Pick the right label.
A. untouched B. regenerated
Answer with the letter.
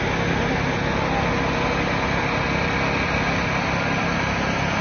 A